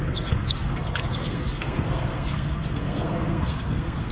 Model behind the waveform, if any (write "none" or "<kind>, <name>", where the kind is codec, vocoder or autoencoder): codec, SNAC